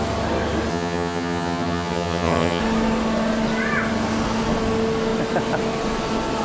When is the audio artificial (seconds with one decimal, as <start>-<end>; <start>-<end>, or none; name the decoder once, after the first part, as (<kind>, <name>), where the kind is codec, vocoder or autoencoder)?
0.7-2.6 (vocoder, HiFi-GAN)